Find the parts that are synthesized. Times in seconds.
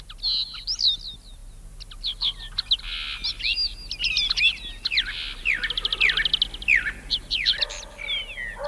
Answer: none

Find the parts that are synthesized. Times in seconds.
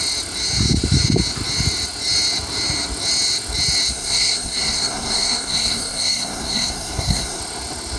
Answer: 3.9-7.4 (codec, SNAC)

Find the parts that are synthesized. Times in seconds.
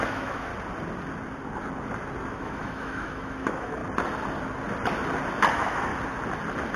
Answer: 0.0-0.5 (autoencoder, DAC-VAE); 2.3-3.8; 5.5-5.9